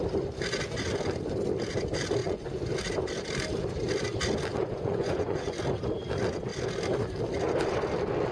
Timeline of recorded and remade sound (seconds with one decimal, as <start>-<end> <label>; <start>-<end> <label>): 0.0-2.2 recorded; 2.2-2.7 remade; 2.7-4.5 recorded; 4.5-5.6 remade; 5.6-8.3 recorded